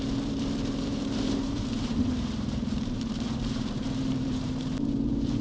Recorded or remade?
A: remade